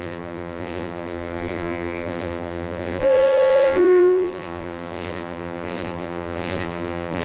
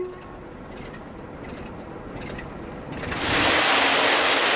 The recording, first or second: second